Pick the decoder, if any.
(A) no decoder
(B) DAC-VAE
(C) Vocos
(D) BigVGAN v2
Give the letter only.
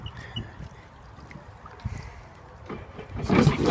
A